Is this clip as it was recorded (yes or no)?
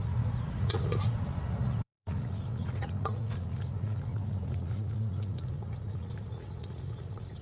no